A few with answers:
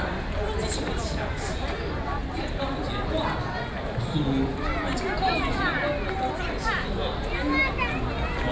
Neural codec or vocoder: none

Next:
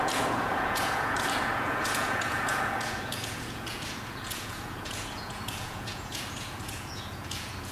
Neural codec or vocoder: vocoder, Vocos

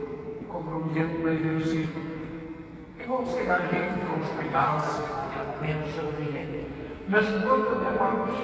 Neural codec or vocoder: codec, SNAC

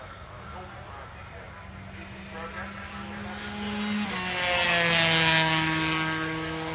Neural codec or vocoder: none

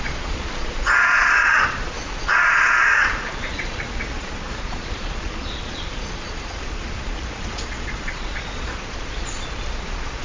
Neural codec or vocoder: vocoder, Vocos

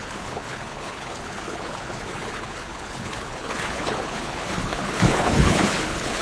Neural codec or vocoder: codec, HILCodec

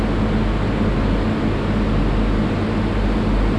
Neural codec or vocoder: none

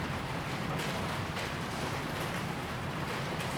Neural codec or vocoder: vocoder, BigVGAN v2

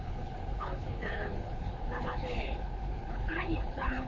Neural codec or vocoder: codec, HILCodec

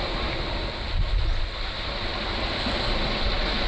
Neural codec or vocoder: none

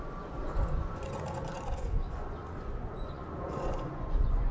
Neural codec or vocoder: vocoder, Vocos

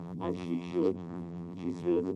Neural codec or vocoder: vocoder, BigVGAN v2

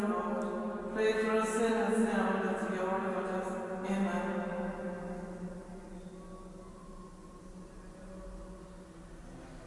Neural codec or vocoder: none